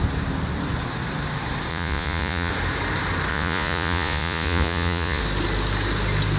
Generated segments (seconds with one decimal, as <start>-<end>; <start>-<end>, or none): 1.7-2.5; 3.3-5.2

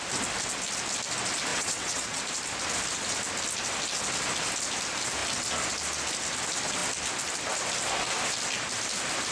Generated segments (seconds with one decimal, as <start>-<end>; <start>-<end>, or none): 1.5-2.2

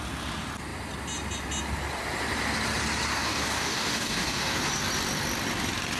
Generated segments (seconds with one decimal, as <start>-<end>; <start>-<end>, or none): 3.1-4.5

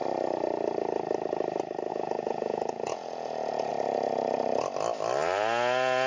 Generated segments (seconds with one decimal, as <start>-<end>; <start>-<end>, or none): 1.9-3.7

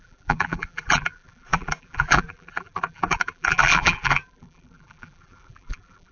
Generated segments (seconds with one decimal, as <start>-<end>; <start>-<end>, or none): 0.0-6.1

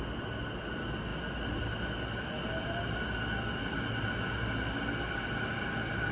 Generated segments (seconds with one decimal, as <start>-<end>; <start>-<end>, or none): none

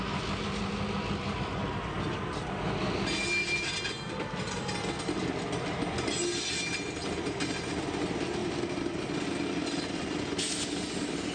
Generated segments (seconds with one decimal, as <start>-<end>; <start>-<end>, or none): 8.4-9.0; 9.6-10.2